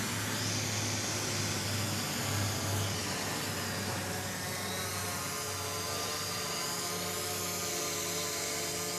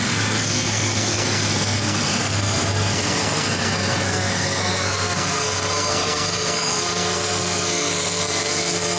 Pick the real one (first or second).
first